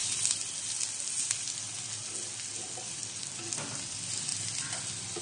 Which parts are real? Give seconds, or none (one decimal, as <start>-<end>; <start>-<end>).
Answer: 0.7-4.3